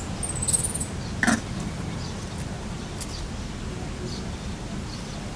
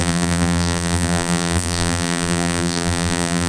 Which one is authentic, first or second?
first